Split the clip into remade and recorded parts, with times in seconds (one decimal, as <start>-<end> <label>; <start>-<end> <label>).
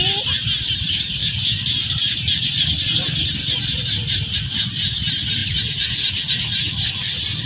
0.0-7.5 recorded